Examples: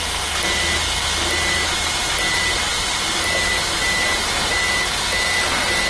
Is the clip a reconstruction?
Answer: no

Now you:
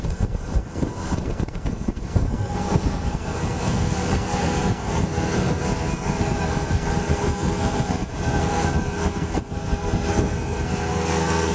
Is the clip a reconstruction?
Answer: yes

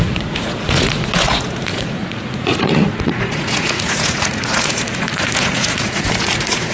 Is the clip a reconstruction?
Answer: yes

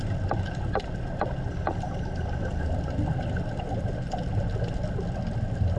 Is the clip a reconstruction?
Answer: no